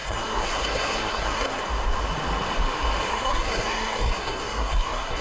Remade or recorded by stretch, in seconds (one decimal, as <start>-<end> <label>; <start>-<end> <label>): 0.0-1.6 remade; 1.6-3.1 recorded; 3.1-5.2 remade